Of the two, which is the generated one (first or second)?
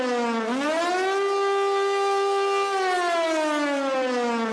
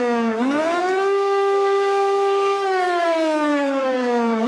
second